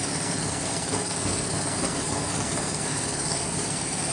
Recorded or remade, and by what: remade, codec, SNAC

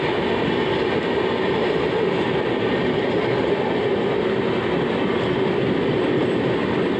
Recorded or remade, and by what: recorded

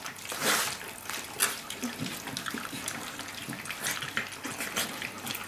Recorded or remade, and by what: recorded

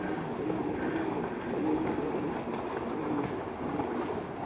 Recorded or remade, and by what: recorded